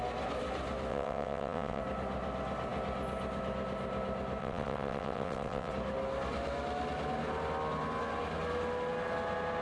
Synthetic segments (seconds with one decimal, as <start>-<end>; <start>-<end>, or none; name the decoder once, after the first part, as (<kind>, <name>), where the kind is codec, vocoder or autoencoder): 0.9-1.8 (vocoder, WaveNeXt); 4.4-5.7